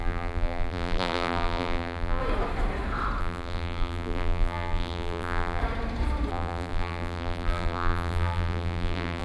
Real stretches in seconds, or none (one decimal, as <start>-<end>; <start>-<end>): 2.2-3.2; 5.6-6.3

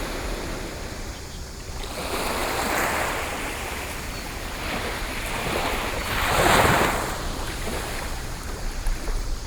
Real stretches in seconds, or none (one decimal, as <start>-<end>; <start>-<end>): 6.0-7.2

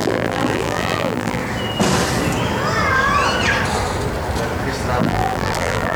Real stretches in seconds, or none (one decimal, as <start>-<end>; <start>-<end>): 1.4-5.0

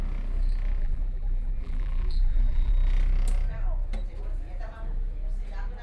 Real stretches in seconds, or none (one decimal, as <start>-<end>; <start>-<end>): 0.0-0.8; 2.7-5.8

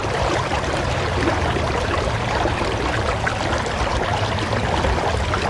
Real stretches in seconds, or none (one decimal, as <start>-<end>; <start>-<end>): 3.3-5.5

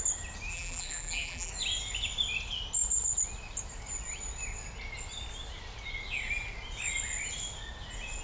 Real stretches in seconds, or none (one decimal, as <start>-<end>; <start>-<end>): 0.0-0.5; 1.5-8.2

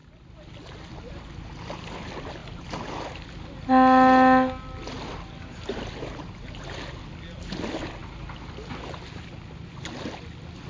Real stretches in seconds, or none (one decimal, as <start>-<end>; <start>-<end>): 0.0-10.7

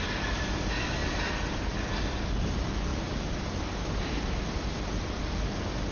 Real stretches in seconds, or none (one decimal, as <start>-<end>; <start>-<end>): 0.0-2.9; 4.8-5.9